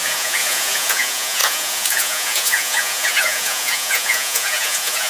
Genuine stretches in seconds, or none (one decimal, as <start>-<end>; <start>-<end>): none